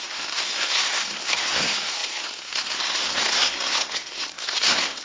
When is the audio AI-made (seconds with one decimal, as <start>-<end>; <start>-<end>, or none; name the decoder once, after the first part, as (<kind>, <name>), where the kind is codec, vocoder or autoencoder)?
0.0-5.0 (codec, SNAC)